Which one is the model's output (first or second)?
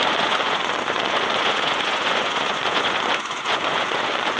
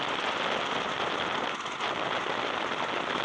first